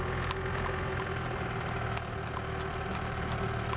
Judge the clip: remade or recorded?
recorded